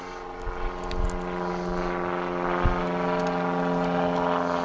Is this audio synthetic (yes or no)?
no